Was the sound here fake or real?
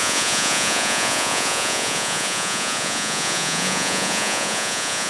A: fake